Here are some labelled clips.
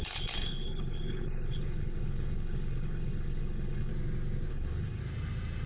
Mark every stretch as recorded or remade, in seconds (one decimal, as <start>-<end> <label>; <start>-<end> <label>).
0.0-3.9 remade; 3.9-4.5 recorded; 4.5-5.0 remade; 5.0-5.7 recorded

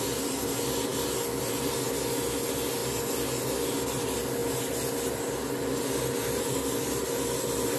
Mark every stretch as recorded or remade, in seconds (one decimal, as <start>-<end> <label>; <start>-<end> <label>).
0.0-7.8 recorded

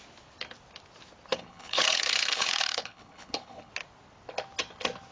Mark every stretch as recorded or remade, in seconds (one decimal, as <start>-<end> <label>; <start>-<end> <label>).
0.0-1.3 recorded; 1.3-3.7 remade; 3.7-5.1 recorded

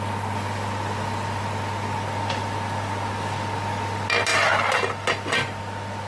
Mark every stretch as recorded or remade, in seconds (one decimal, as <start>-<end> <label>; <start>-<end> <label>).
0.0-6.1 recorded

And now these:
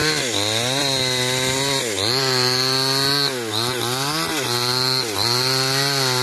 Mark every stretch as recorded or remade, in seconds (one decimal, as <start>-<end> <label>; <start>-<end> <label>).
0.0-6.2 recorded

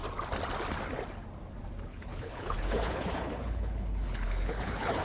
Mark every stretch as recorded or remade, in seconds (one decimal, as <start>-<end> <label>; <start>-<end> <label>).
0.0-1.9 recorded; 1.9-5.0 remade

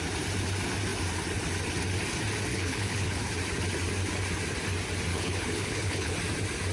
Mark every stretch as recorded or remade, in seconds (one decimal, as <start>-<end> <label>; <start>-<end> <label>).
0.0-2.5 recorded; 2.5-3.3 remade; 3.3-5.1 recorded; 5.1-6.1 remade; 6.1-6.7 recorded

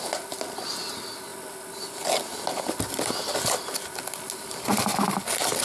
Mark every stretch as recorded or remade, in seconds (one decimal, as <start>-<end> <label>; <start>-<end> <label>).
0.0-5.6 recorded